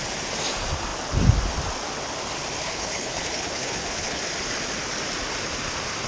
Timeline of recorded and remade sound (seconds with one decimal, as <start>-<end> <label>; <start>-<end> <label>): 0.0-2.6 recorded; 2.6-4.2 remade; 4.2-6.1 recorded